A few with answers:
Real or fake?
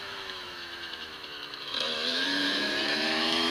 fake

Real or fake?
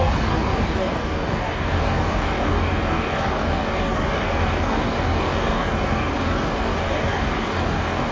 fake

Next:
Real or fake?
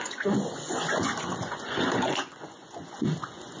fake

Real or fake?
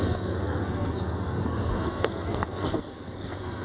fake